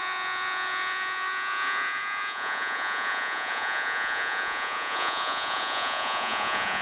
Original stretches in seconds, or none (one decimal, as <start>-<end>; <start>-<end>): none